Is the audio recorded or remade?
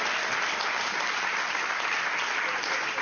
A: recorded